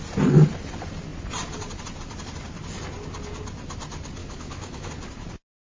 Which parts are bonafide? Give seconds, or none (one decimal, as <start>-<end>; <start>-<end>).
0.0-4.2; 4.9-5.6